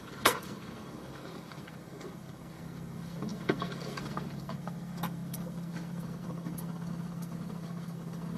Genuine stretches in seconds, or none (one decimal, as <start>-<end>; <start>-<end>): none